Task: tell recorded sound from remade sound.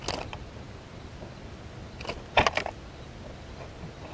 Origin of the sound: recorded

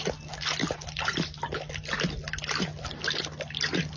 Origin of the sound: recorded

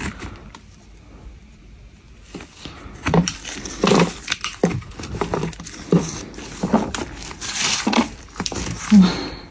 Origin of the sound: remade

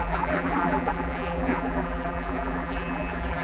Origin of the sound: remade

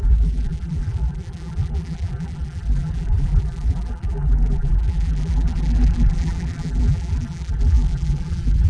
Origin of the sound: remade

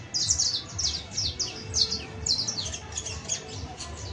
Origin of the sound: recorded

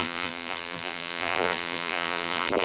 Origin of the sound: remade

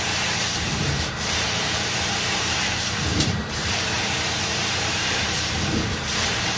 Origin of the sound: remade